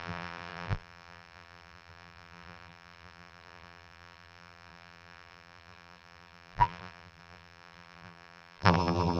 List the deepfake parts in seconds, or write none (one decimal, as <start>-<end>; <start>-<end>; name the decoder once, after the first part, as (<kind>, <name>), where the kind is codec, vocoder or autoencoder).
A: 0.0-9.2 (vocoder, BigVGAN v2)